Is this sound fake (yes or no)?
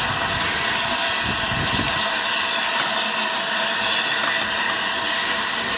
no